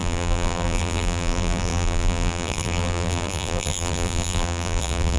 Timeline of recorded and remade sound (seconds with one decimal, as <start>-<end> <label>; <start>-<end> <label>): 0.0-5.2 remade